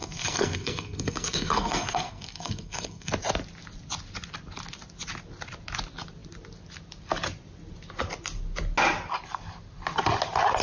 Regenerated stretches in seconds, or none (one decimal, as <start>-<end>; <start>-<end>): 0.0-3.1